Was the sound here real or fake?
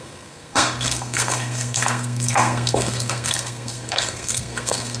fake